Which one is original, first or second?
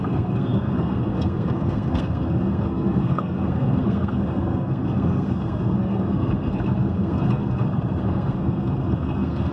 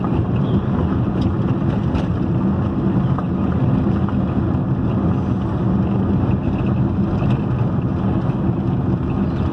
second